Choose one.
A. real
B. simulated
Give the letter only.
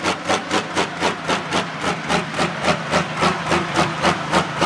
B